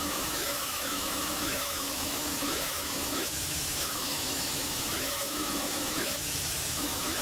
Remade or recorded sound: remade